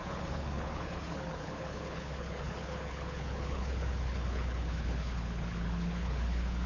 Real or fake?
fake